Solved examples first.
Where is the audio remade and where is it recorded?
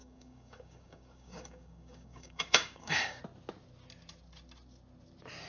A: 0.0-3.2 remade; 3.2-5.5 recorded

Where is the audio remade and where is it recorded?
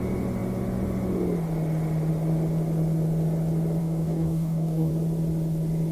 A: 0.0-3.8 recorded; 3.8-4.9 remade; 4.9-5.9 recorded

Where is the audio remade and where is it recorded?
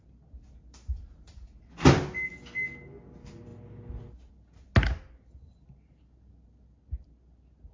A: 0.0-7.7 recorded